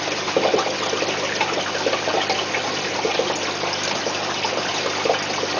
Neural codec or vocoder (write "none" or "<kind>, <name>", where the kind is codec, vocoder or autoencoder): none